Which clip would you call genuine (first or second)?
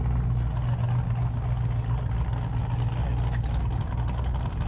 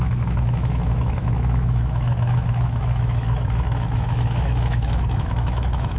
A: first